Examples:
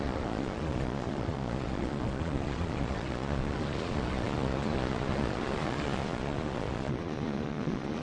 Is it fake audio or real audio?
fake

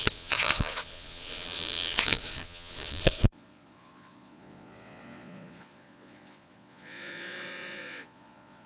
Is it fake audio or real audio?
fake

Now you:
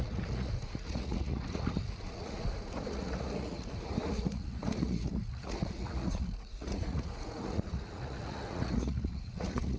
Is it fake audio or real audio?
fake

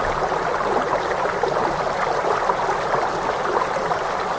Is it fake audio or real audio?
real